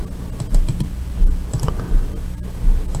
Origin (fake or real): real